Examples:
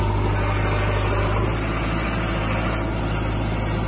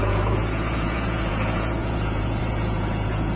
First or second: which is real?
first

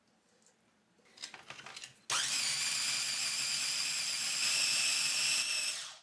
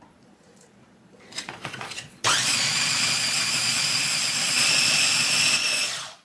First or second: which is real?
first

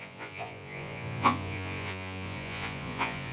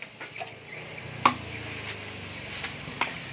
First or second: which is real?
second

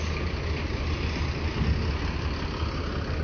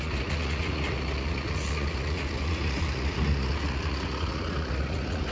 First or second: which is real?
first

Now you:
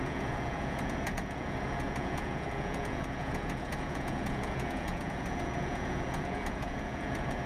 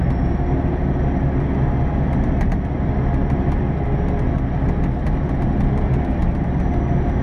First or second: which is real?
second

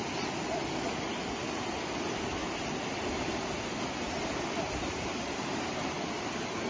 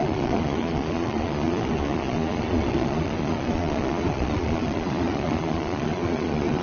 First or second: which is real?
first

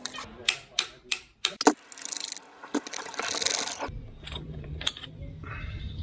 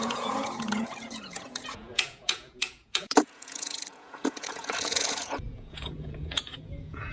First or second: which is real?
first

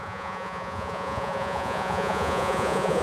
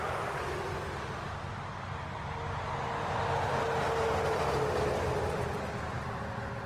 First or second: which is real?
second